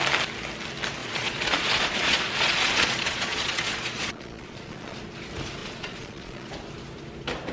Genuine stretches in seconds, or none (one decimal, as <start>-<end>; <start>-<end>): 0.0-1.0; 5.0-5.6; 6.5-7.5